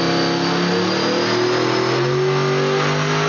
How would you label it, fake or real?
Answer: real